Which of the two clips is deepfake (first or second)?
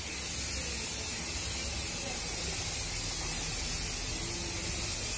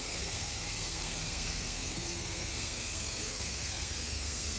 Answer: second